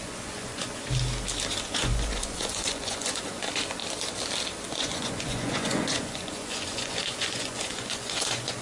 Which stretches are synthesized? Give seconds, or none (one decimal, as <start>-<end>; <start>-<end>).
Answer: 0.0-0.8; 1.6-3.8; 4.7-8.6